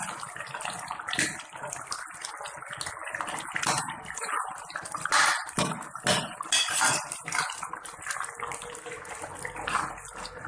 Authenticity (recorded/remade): recorded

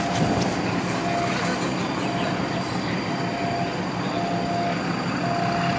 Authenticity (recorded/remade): recorded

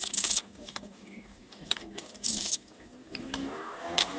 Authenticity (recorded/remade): remade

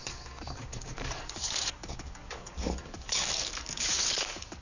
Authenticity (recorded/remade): remade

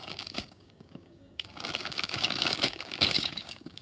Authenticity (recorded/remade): remade